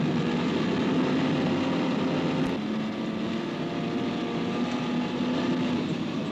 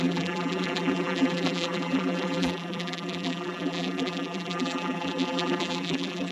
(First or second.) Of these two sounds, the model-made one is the second